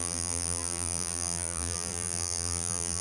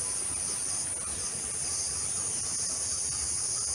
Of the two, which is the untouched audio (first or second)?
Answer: second